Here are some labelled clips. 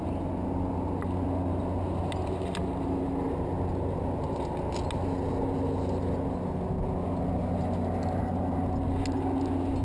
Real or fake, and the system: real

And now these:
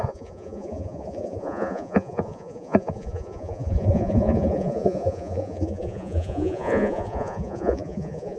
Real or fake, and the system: fake, vocoder, Vocos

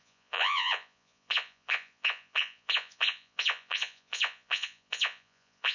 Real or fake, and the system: fake, vocoder, Vocos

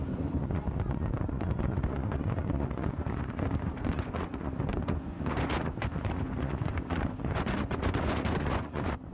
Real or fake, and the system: fake, vocoder, Vocos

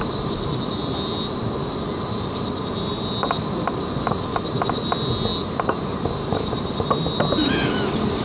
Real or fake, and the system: real